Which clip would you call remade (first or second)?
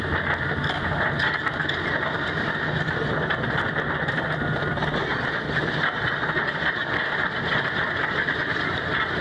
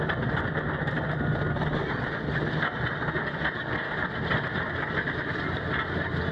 first